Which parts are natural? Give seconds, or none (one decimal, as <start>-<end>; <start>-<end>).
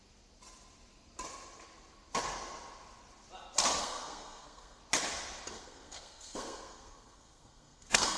0.0-3.8; 4.8-5.5